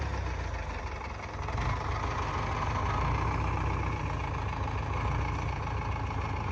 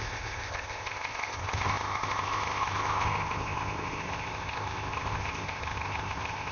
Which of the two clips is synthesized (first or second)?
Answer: second